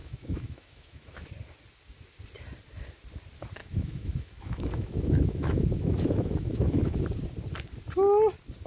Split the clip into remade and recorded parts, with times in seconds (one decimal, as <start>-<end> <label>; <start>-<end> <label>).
0.0-1.3 remade; 1.3-3.6 recorded; 3.6-7.0 remade; 7.0-8.7 recorded